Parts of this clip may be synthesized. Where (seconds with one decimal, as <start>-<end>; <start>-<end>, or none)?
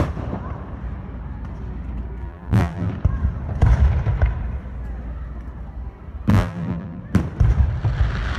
2.2-2.9; 6.3-7.0